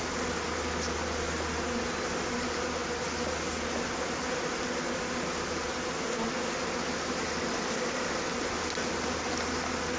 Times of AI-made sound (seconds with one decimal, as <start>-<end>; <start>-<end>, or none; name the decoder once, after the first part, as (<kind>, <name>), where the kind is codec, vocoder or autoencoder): none

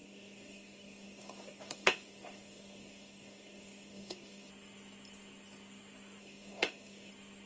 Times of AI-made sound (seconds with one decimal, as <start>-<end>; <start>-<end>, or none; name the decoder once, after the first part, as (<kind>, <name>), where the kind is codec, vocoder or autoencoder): 0.0-4.5 (codec, DAC); 6.2-7.1

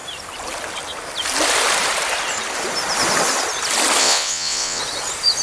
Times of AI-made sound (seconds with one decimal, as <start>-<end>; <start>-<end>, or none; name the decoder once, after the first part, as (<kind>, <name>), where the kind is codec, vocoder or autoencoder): 4.0-4.8 (vocoder, WaveNeXt)

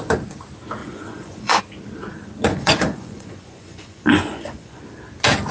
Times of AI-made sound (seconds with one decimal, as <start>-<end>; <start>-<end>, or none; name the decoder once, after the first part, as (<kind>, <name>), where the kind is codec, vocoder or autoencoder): 0.8-1.6 (vocoder, Vocos); 2.5-4.8

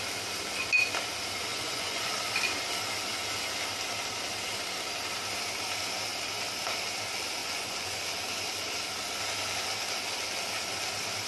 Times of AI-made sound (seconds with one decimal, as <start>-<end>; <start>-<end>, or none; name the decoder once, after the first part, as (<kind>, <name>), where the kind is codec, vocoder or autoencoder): 1.5-2.1 (vocoder, Vocos); 7.4-8.0

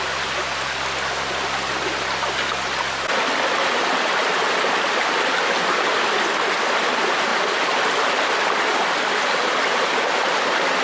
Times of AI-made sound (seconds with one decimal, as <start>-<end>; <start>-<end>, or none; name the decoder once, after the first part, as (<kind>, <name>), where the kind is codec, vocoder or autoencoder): none